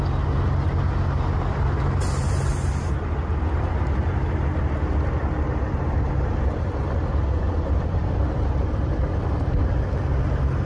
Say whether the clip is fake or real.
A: real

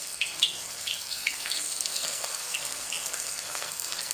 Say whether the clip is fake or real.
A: fake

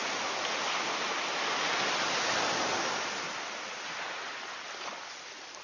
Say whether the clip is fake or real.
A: real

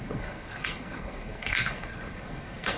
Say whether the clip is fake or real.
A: fake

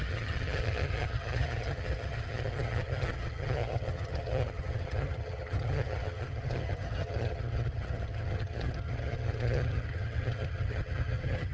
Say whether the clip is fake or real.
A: fake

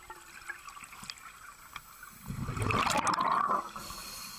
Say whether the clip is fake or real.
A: real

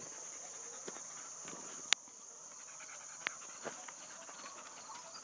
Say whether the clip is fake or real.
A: real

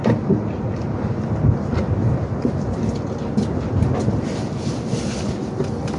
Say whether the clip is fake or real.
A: real